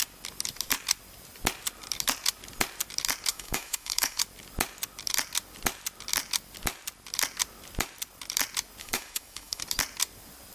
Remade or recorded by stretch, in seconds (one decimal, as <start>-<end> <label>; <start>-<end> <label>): 0.0-3.3 recorded; 3.3-4.2 remade; 4.2-8.8 recorded; 8.8-9.6 remade; 9.6-10.5 recorded